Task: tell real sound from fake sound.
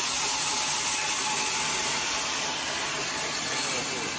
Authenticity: real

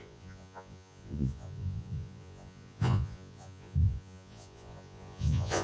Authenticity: fake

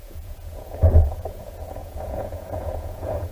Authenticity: fake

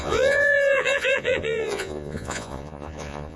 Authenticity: fake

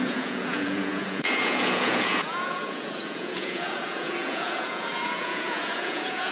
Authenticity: fake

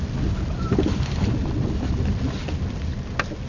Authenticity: real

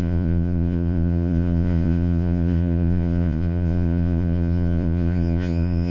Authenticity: fake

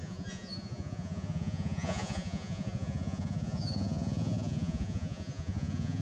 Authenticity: fake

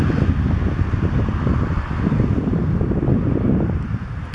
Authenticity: real